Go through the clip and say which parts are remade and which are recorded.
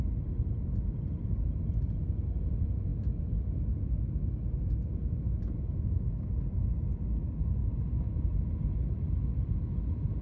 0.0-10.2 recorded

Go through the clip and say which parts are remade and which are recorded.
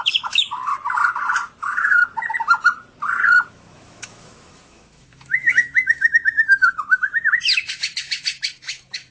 0.0-0.7 remade; 0.7-1.6 recorded; 1.6-2.0 remade; 2.0-3.5 recorded; 3.5-9.1 remade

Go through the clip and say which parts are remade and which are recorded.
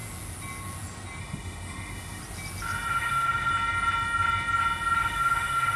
0.0-1.2 recorded; 1.2-2.2 remade; 2.2-2.9 recorded; 2.9-3.5 remade; 3.5-5.0 recorded; 5.0-5.8 remade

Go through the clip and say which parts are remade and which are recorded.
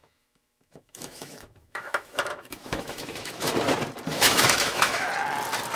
0.0-3.5 remade; 3.5-4.1 recorded; 4.1-5.1 remade; 5.1-5.8 recorded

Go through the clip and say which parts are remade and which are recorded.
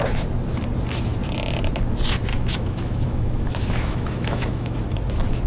0.0-2.3 recorded; 2.3-4.8 remade; 4.8-5.5 recorded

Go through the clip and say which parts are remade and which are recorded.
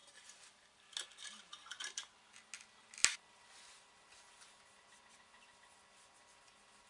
0.0-6.9 recorded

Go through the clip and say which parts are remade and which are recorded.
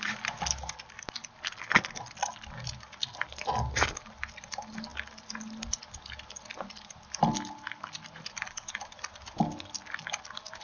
0.0-10.6 recorded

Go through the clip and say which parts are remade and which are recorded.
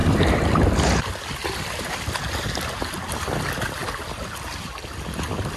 0.0-5.6 recorded